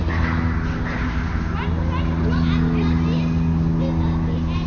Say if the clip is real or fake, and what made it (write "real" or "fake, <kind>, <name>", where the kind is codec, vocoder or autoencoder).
real